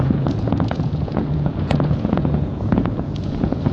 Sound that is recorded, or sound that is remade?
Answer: remade